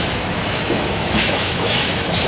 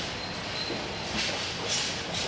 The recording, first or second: second